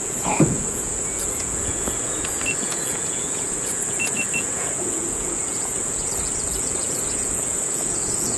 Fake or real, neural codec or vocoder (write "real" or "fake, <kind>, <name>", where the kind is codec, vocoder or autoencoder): fake, vocoder, Vocos